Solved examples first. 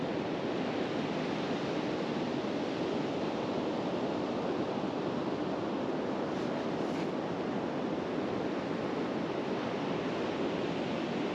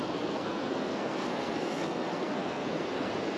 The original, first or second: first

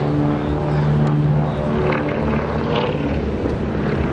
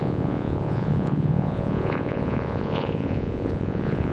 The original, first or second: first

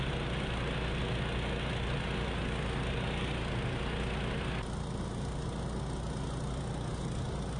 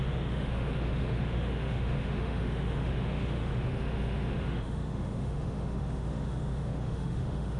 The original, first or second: first